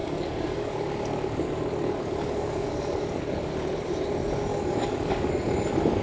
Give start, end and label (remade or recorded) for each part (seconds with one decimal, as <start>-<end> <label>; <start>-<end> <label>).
0.0-3.5 remade; 3.5-4.5 recorded; 4.5-5.3 remade; 5.3-6.0 recorded